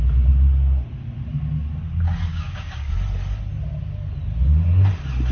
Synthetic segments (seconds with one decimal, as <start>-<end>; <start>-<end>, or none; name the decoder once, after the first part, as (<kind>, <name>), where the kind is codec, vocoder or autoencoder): 2.3-2.9 (codec, DAC)